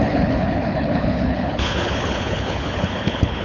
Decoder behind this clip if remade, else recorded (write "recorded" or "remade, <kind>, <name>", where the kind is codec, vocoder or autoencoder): remade, codec, HILCodec